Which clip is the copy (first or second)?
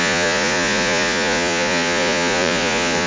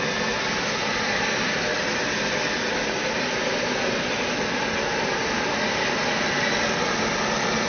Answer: first